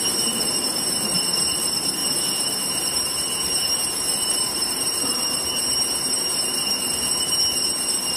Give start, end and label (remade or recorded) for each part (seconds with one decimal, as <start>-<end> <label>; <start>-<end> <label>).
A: 0.0-2.0 remade; 2.0-2.8 recorded; 2.8-8.2 remade